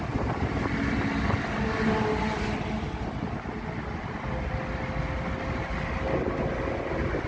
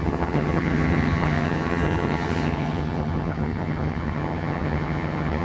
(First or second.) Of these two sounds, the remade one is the second